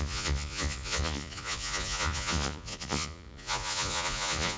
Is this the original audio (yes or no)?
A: no